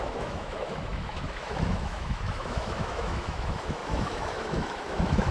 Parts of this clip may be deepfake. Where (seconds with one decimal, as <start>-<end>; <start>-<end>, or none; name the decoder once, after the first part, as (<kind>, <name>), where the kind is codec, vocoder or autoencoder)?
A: 0.0-5.3 (autoencoder, DAC-VAE)